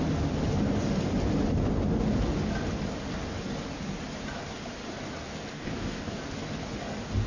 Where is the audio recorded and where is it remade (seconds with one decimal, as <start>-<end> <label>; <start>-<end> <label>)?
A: 0.0-5.5 recorded; 5.5-6.2 remade; 6.2-7.3 recorded